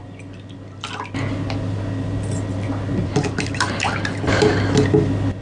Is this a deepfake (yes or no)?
no